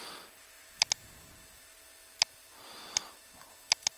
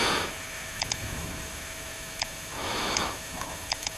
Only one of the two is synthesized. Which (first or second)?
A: second